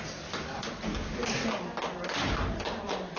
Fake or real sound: real